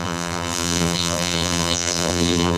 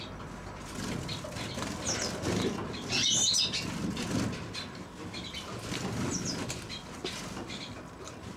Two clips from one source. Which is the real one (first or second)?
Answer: second